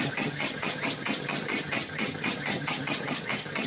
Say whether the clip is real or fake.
fake